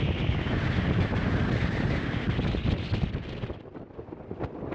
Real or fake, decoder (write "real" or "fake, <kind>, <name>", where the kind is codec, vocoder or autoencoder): real